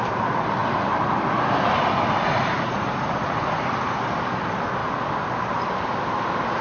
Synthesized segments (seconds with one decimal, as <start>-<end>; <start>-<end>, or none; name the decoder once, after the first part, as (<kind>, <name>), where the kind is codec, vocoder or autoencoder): 2.2-3.9 (vocoder, Vocos)